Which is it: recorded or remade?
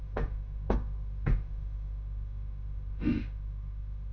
remade